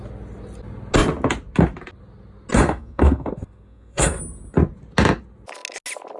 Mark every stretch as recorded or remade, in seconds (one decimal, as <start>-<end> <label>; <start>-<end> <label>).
0.0-2.5 recorded; 2.5-4.2 remade; 4.2-6.2 recorded